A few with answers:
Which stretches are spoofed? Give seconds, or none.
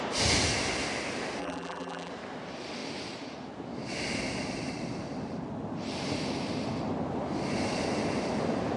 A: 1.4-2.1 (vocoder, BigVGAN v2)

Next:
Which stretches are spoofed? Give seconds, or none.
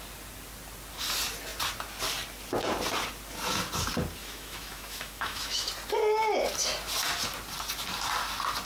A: 4.2-5.7 (autoencoder, DAC-VAE)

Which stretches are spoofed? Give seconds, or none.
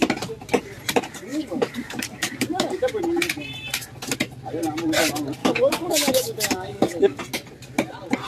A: 1.3-3.0 (codec, DAC); 5.4-7.2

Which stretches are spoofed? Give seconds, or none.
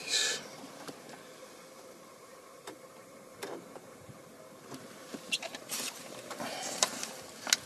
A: 2.2-4.1 (vocoder, BigVGAN v2); 5.1-7.0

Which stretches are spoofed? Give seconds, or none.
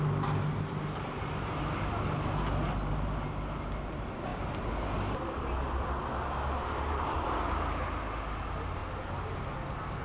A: none